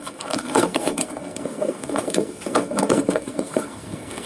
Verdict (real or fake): fake